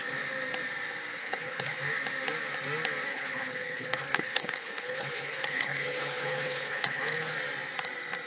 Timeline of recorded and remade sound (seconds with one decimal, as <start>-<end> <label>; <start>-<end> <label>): 0.0-1.2 recorded; 1.2-1.8 remade; 1.8-3.1 recorded; 3.1-7.3 remade; 7.3-8.3 recorded